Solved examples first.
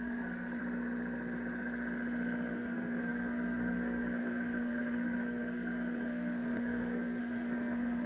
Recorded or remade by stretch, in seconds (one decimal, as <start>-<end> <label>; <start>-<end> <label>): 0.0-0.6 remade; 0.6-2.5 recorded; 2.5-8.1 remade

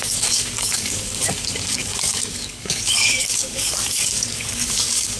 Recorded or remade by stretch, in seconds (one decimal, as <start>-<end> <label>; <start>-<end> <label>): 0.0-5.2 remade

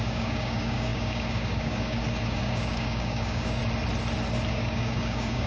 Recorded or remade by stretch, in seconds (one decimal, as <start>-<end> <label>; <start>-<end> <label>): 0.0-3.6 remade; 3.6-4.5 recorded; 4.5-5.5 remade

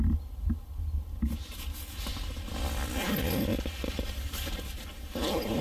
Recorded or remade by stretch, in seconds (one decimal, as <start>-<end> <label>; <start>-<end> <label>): 0.0-3.5 recorded; 3.5-5.6 remade

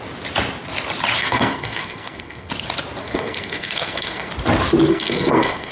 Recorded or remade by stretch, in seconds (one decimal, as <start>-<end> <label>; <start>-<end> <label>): 0.0-1.2 recorded; 1.2-2.5 remade; 2.5-3.0 recorded; 3.0-4.3 remade; 4.3-4.9 recorded; 4.9-5.7 remade

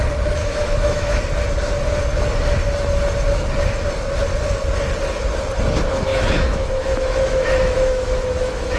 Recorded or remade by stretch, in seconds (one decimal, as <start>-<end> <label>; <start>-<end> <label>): 0.0-0.4 recorded; 0.4-1.2 remade; 1.2-6.1 recorded; 6.1-8.8 remade

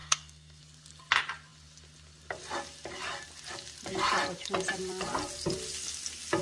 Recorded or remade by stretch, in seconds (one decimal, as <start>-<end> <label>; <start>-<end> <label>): 0.0-0.6 remade; 0.6-6.4 recorded